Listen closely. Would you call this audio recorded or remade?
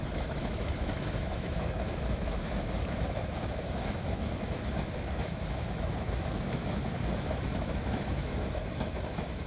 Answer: remade